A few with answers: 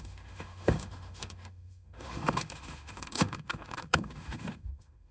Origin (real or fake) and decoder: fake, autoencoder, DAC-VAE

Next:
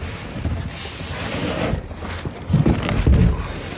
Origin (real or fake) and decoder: real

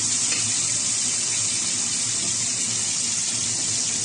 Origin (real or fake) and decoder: real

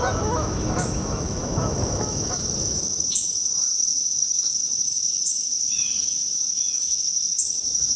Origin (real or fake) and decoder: fake, autoencoder, DAC-VAE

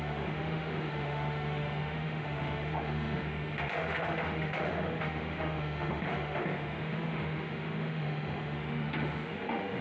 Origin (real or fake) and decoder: fake, autoencoder, DAC-VAE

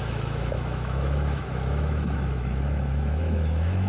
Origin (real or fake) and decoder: fake, autoencoder, DAC-VAE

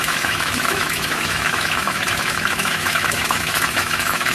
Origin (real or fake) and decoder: fake, autoencoder, DAC-VAE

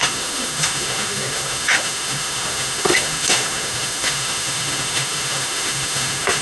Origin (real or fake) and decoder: fake, autoencoder, DAC-VAE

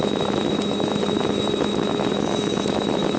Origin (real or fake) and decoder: fake, autoencoder, DAC-VAE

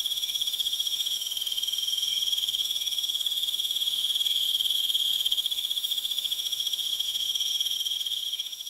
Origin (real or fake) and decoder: fake, autoencoder, DAC-VAE